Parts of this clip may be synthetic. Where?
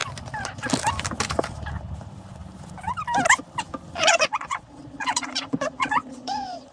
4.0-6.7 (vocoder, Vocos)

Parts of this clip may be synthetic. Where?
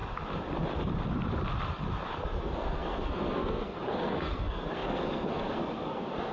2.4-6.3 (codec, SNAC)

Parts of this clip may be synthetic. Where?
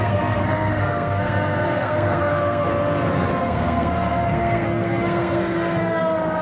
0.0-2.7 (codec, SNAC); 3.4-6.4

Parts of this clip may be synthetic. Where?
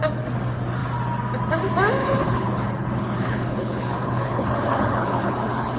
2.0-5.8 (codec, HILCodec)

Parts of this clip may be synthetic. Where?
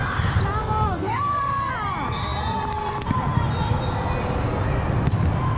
0.6-1.7 (codec, SNAC)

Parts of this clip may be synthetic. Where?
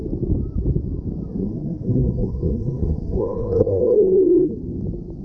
1.4-4.5 (codec, SNAC)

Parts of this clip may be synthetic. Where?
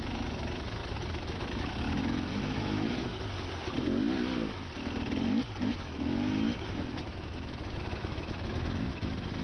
0.0-3.1 (autoencoder, DAC-VAE); 5.6-9.4